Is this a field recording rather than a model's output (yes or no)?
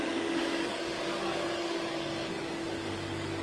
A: no